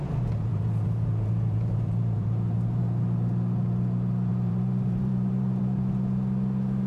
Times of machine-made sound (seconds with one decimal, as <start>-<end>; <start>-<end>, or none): 0.5-2.8; 4.3-5.6